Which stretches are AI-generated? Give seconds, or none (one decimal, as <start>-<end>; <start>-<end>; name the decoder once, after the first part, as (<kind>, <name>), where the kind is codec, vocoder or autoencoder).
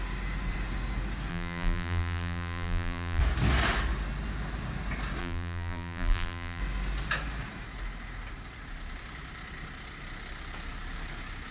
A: 1.3-3.2 (vocoder, BigVGAN v2); 5.2-6.6